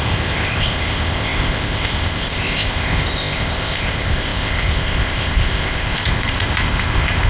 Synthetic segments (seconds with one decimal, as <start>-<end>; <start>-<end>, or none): 0.0-7.3